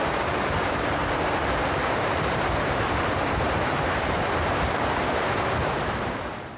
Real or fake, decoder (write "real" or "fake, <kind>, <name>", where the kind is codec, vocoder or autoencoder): fake, vocoder, BigVGAN v2